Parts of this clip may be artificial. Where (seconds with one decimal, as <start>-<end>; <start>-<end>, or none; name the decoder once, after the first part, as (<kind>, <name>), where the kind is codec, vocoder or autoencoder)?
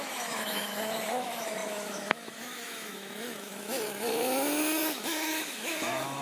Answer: 0.0-6.2 (autoencoder, DAC-VAE)